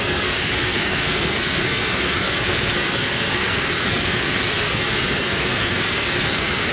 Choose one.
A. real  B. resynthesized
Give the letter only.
B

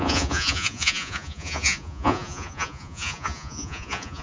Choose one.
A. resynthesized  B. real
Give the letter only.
A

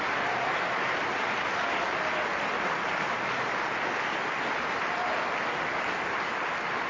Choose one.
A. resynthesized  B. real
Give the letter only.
B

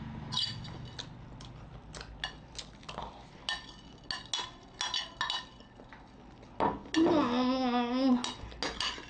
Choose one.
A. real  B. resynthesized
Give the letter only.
A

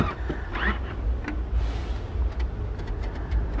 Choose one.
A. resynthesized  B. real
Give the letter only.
A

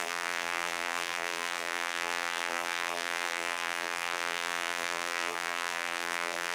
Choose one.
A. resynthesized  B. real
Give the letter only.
A